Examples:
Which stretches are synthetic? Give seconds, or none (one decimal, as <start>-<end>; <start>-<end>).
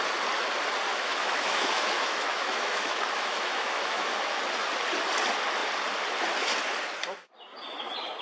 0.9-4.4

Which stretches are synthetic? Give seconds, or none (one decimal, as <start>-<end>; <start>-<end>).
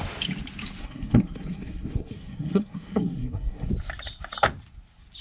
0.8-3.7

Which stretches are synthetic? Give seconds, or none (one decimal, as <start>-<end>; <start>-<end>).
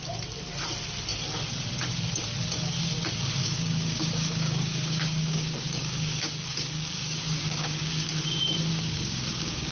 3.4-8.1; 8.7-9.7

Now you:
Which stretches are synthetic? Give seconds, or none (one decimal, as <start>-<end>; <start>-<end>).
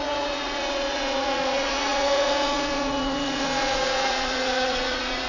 0.0-5.3